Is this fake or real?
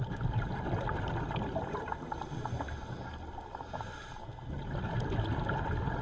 real